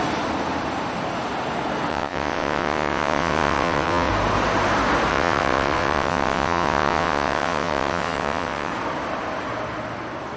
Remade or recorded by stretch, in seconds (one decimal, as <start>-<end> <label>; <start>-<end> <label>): 0.0-1.9 recorded; 1.9-4.1 remade; 4.1-5.1 recorded; 5.1-8.7 remade; 8.7-10.4 recorded